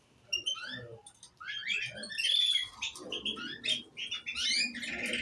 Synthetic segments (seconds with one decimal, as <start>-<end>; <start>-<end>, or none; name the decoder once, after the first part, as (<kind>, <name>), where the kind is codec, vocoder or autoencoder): none

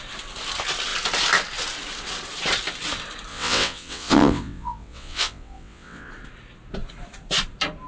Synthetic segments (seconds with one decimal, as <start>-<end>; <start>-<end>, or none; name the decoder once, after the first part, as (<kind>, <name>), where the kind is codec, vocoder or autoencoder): 3.3-6.1 (vocoder, WaveNeXt)